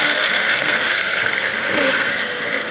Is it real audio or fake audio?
fake